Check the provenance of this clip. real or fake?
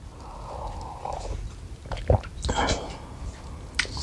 real